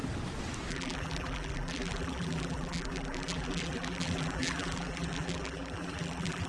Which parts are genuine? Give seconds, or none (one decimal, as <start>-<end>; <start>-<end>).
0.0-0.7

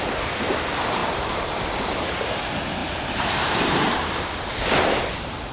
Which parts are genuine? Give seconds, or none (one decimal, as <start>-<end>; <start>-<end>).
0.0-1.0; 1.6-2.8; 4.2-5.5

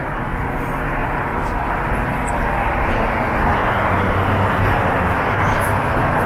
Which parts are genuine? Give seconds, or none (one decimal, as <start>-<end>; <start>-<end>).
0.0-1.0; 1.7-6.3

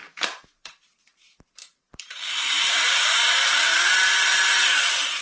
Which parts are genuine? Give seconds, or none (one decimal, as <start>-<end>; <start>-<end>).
3.7-4.4

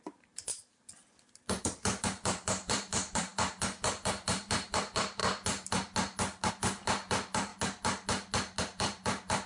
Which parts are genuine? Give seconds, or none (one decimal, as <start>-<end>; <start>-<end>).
0.5-1.6; 5.2-6.5; 7.5-8.6

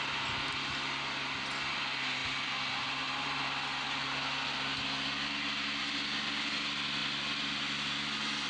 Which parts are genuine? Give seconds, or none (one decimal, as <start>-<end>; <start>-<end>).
0.0-8.5

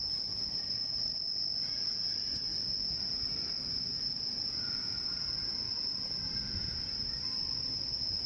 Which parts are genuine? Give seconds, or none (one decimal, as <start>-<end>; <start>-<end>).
0.0-8.3

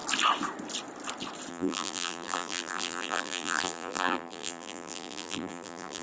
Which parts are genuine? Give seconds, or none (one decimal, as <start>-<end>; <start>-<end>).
0.0-1.5